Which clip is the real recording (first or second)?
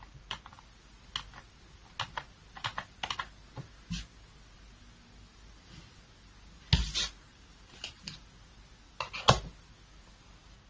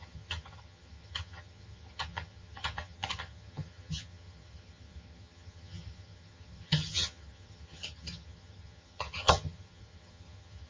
first